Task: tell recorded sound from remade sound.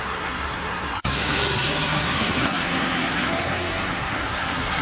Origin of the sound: remade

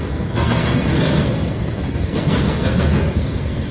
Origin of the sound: remade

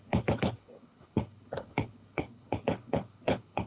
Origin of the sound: remade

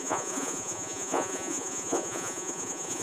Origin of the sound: remade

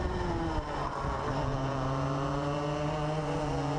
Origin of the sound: recorded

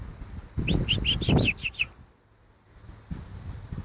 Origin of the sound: recorded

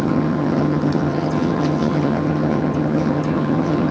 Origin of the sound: remade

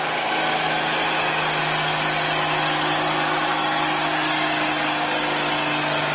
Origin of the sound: recorded